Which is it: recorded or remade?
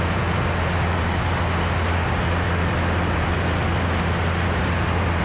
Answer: recorded